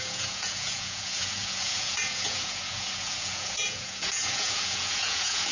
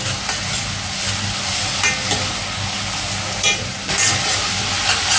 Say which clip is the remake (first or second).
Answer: first